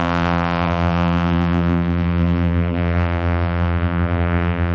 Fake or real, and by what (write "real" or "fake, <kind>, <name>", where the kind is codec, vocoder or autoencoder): fake, vocoder, BigVGAN v2